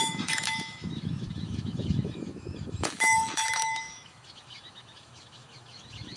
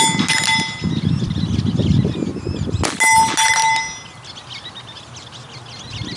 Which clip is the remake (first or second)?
first